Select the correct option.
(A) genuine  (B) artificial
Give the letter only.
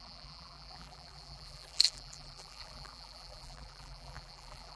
B